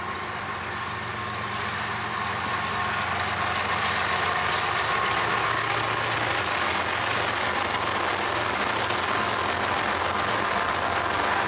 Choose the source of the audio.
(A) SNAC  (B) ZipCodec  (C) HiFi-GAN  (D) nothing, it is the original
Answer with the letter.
D